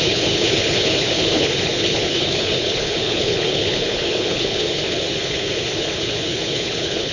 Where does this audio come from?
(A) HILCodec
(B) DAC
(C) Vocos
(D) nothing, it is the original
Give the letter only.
A